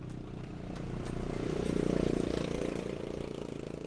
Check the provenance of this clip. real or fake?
fake